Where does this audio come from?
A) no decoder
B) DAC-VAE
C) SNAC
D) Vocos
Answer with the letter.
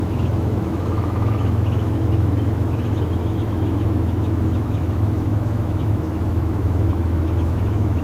B